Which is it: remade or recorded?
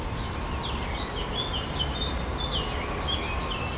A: recorded